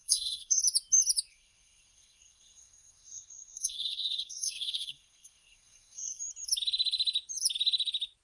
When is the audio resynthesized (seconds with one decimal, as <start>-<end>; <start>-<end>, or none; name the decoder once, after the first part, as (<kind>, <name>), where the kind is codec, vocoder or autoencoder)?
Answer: 0.0-0.6 (codec, SNAC); 1.3-6.2